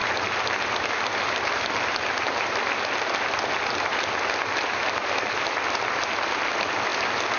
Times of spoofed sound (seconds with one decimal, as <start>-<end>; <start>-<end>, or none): none